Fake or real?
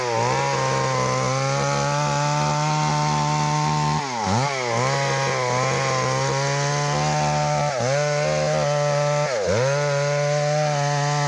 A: real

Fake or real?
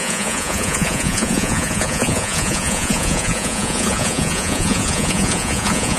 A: fake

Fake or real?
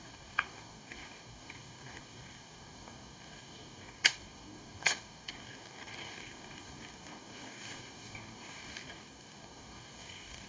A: fake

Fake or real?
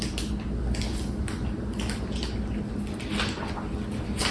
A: real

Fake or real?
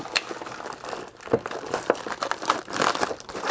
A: fake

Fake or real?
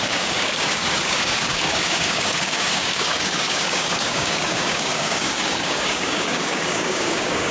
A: fake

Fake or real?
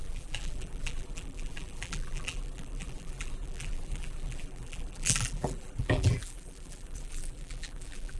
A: fake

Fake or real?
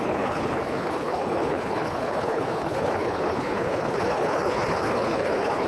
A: fake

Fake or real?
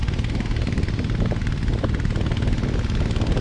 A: real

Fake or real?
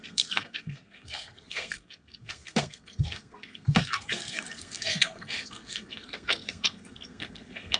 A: fake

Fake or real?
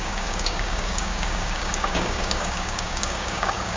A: fake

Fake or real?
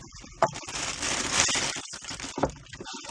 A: real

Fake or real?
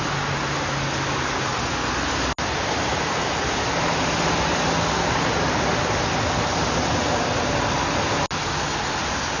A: real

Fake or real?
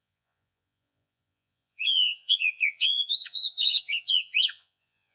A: fake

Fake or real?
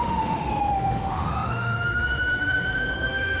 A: fake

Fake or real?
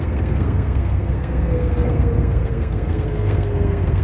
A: fake